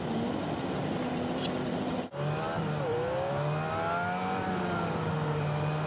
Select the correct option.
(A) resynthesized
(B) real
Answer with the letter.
B